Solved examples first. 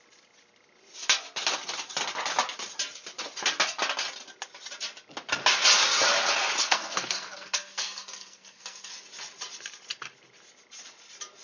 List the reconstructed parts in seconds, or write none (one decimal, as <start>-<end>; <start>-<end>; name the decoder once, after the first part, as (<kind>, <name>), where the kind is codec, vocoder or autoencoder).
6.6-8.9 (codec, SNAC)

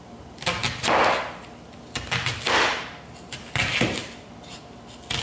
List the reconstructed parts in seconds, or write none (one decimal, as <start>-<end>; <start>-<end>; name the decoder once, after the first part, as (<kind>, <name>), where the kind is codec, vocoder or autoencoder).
none

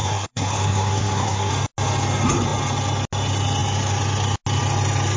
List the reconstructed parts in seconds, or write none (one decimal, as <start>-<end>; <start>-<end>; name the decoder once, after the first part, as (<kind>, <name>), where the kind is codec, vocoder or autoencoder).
0.0-1.5 (codec, SNAC)

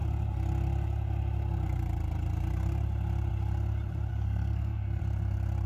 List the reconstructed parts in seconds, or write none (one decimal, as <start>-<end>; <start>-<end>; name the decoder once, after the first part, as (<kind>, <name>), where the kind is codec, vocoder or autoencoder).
4.1-5.0 (codec, SNAC)

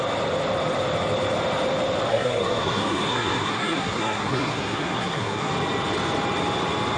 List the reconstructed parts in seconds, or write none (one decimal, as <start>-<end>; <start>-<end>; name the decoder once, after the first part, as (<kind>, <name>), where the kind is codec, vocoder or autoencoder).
2.1-5.5 (codec, SNAC)

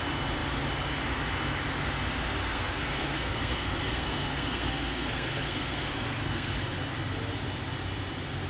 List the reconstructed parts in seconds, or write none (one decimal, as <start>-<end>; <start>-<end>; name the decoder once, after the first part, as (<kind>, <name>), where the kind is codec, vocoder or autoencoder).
2.4-6.8 (codec, SNAC)